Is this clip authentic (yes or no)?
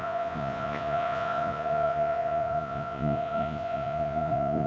no